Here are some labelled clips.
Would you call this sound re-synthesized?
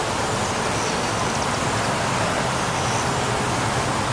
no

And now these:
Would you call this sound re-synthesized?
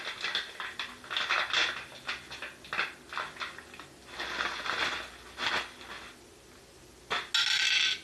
no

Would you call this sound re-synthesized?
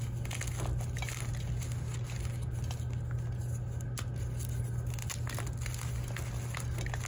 no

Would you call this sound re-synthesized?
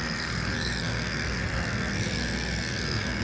yes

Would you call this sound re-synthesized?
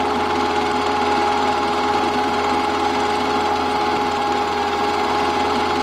no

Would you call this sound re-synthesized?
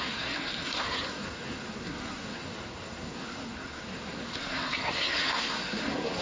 yes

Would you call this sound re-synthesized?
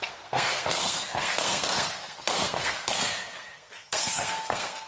yes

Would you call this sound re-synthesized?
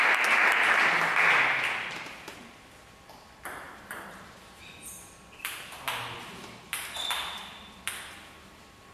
no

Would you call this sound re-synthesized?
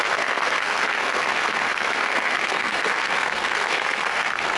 yes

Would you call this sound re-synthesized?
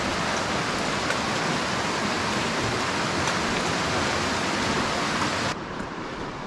no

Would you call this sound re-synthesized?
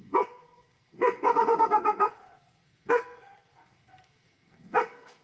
yes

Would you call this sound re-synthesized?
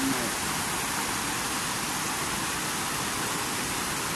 no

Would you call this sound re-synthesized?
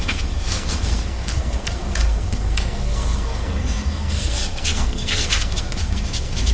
yes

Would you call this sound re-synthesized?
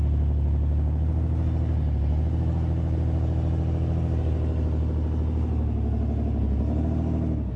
no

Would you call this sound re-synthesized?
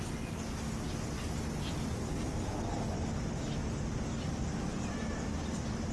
no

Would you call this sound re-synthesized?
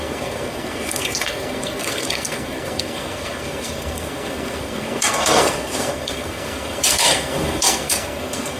yes